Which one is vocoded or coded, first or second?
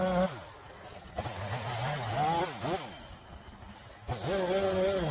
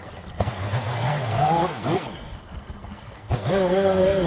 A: second